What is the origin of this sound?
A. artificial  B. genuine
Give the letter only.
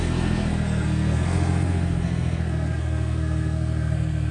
A